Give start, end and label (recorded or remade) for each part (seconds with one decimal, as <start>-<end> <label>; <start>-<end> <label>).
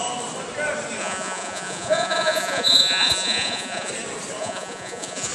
0.0-1.0 recorded; 1.0-3.9 remade; 3.9-4.4 recorded; 4.4-5.3 remade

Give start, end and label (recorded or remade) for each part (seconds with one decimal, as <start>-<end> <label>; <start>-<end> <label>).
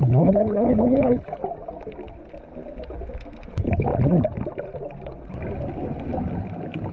0.0-1.4 remade; 1.4-3.5 recorded; 3.5-3.9 remade; 3.9-6.9 recorded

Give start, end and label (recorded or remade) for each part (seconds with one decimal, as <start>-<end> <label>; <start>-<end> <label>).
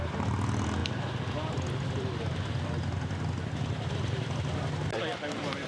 0.0-5.7 recorded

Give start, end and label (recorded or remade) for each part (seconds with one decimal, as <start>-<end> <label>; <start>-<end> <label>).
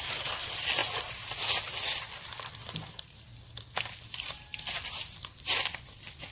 0.0-6.3 recorded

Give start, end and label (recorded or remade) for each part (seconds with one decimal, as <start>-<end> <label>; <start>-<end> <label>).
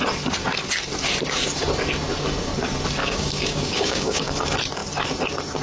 0.0-3.0 recorded; 3.0-4.3 remade; 4.3-5.6 recorded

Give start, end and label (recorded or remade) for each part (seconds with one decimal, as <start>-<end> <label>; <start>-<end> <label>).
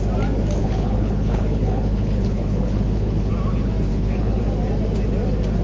0.0-0.6 recorded; 0.6-3.3 remade; 3.3-3.9 recorded; 3.9-4.4 remade; 4.4-5.6 recorded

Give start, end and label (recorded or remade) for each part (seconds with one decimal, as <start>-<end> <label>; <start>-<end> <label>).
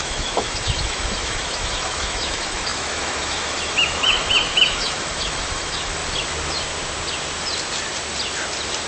0.0-6.0 remade; 6.0-8.9 recorded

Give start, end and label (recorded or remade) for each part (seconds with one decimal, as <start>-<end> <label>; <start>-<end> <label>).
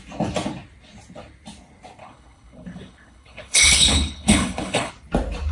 0.0-2.0 recorded; 2.0-4.9 remade; 4.9-5.5 recorded